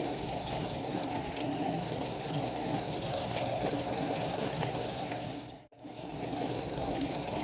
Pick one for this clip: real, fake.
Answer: fake